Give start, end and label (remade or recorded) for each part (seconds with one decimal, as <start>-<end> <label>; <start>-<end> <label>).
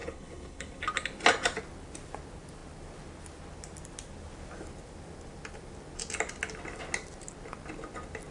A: 0.0-0.8 remade; 0.8-8.3 recorded